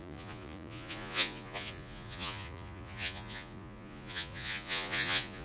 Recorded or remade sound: remade